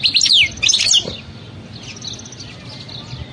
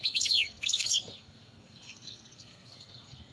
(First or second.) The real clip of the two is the first